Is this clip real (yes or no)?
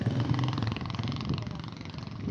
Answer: yes